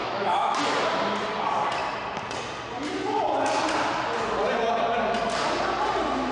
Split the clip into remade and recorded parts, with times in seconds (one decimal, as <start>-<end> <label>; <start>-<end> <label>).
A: 0.0-0.6 remade; 0.6-6.3 recorded